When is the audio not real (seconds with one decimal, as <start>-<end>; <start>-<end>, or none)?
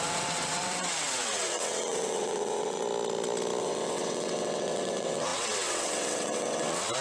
0.0-2.8; 3.6-7.0